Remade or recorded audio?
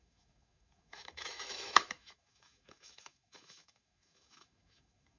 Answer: remade